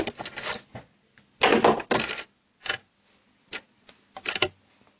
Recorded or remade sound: recorded